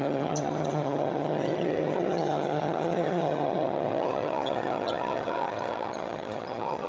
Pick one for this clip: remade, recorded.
remade